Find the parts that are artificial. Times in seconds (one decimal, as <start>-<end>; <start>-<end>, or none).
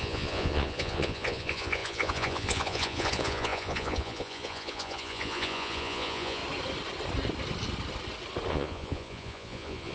0.0-6.4; 8.5-9.9